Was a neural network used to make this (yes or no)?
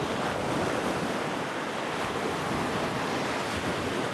no